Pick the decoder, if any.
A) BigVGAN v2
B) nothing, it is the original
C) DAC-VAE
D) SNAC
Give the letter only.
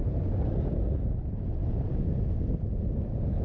B